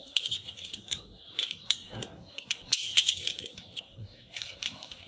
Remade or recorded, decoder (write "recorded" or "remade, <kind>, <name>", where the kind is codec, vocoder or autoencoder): remade, codec, SNAC